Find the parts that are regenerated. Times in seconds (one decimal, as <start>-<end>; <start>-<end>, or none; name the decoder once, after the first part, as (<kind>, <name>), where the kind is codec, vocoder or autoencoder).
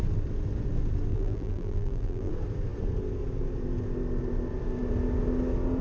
1.1-2.3 (vocoder, BigVGAN v2)